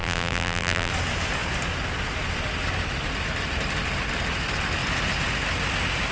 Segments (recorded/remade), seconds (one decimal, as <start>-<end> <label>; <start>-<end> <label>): 0.0-0.9 remade; 0.9-6.1 recorded